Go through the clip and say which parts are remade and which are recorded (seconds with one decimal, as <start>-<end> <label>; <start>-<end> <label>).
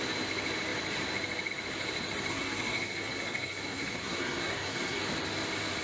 0.0-2.3 recorded; 2.3-5.0 remade; 5.0-5.8 recorded